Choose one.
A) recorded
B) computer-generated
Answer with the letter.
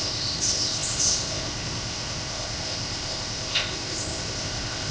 B